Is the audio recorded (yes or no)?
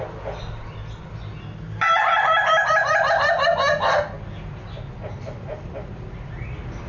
yes